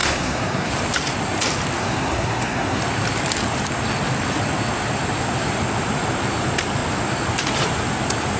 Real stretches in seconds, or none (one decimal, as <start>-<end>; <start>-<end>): 0.7-1.8; 2.8-8.4